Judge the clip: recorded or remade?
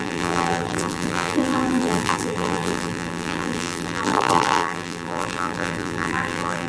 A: remade